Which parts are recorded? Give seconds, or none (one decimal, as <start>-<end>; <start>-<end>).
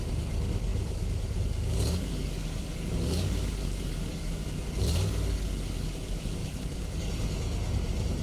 none